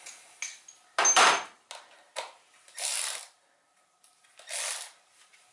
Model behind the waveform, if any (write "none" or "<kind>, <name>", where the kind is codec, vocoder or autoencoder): none